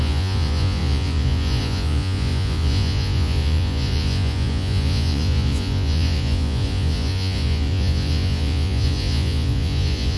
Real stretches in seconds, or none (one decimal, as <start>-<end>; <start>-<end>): none

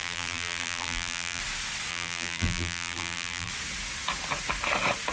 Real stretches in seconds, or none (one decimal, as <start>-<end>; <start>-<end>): 1.4-1.9; 3.5-5.1

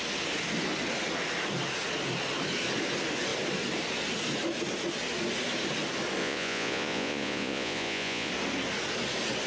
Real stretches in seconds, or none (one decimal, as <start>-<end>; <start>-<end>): 0.0-6.2; 8.3-9.5